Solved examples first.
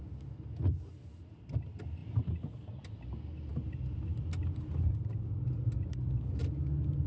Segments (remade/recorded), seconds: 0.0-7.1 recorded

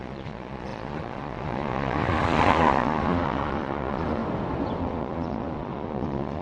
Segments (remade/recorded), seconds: 0.0-4.2 remade; 4.2-4.8 recorded; 4.8-6.4 remade

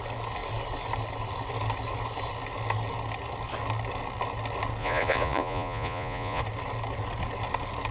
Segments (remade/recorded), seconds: 0.0-4.8 recorded; 4.8-6.4 remade; 6.4-7.9 recorded

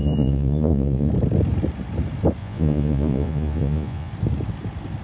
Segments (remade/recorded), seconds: 0.0-1.1 remade; 1.1-2.4 recorded; 2.4-4.1 remade; 4.1-5.0 recorded